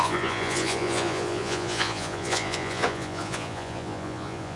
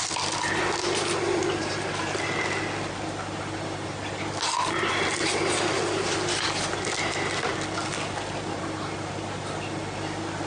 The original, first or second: second